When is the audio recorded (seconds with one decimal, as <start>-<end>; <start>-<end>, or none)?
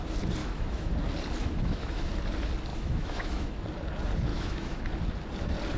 0.0-0.4; 0.9-1.4; 2.1-2.7; 3.6-4.3; 4.8-5.8